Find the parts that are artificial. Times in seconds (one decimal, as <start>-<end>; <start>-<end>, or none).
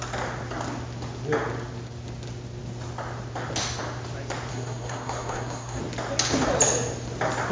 4.5-5.8